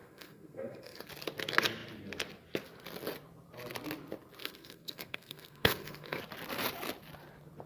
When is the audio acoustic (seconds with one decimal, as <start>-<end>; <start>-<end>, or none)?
1.1-4.4; 6.2-7.7